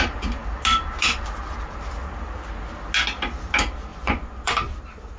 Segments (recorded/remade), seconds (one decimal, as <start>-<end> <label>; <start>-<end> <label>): 0.0-3.9 recorded; 3.9-4.5 remade; 4.5-5.2 recorded